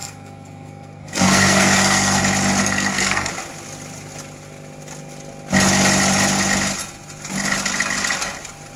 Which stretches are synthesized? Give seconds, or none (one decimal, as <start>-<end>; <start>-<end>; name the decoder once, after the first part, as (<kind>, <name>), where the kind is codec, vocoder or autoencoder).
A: 0.0-2.2 (codec, SNAC); 2.6-3.3